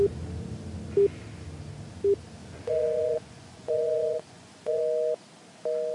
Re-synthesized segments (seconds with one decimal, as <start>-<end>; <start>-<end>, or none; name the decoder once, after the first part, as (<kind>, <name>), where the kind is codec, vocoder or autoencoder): 2.4-4.8 (vocoder, Vocos)